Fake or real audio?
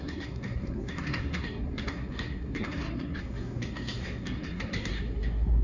fake